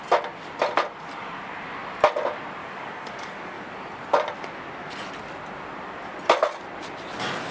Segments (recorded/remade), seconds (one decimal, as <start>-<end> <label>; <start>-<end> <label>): 0.0-2.6 recorded; 2.6-3.6 remade; 3.6-7.5 recorded